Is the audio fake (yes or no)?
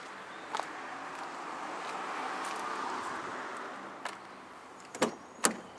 no